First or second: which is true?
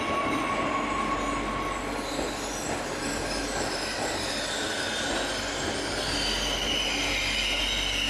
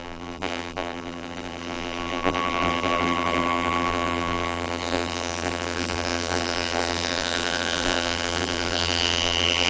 first